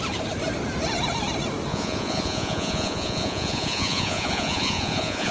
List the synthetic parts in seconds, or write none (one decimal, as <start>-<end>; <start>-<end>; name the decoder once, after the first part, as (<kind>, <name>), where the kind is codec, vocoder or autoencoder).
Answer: 1.7-5.3 (vocoder, Vocos)